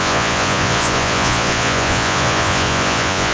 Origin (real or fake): fake